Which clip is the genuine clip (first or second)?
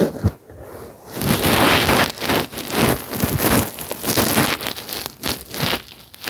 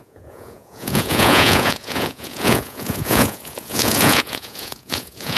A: first